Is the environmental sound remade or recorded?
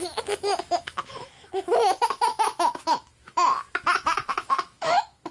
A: remade